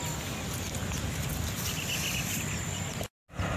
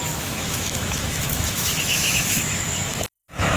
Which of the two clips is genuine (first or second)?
first